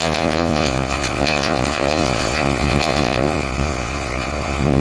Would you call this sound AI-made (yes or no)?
yes